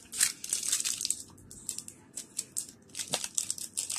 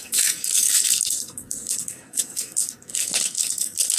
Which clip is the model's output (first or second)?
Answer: second